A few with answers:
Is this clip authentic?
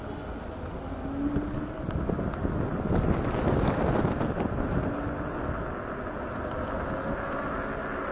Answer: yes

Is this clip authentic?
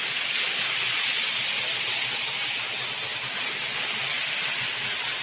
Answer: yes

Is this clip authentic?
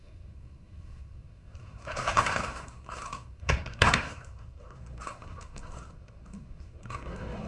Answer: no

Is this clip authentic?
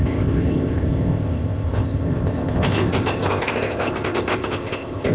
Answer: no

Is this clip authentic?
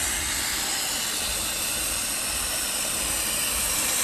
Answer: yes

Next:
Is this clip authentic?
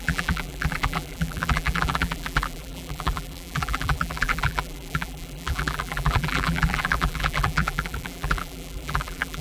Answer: no